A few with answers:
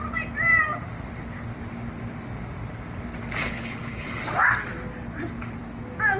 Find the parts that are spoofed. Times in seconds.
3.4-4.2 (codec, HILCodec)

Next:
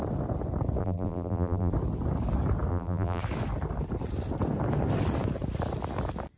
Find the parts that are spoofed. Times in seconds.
0.8-1.7 (vocoder, BigVGAN v2); 2.7-3.2

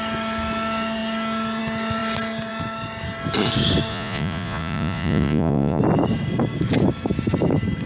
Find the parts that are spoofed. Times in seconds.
3.9-5.8 (vocoder, Vocos)